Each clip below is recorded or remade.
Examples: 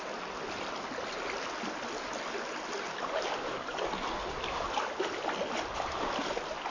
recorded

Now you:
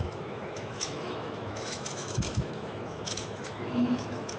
remade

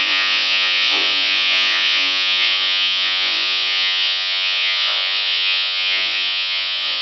remade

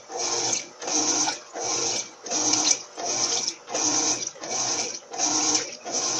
remade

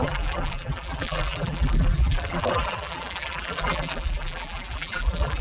remade